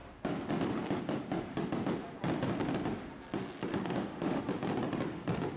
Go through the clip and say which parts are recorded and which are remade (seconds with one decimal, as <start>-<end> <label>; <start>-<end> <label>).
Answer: 0.0-3.7 recorded; 3.7-4.4 remade; 4.4-5.6 recorded